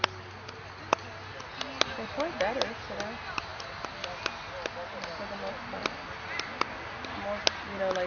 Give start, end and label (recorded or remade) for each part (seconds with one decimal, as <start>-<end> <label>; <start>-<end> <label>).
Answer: 0.0-8.1 recorded

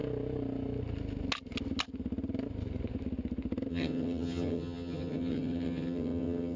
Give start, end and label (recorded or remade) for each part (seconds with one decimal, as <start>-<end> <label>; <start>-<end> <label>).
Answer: 0.0-3.7 recorded; 3.7-6.6 remade

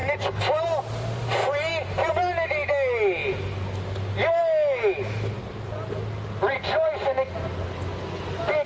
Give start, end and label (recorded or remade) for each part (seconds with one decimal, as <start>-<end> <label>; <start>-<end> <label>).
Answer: 0.0-8.7 recorded

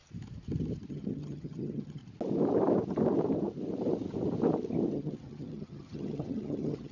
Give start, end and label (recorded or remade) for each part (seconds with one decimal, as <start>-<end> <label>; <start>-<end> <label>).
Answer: 0.0-0.9 recorded; 0.9-2.0 remade; 2.0-4.9 recorded; 4.9-6.9 remade